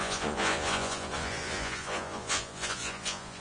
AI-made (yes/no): yes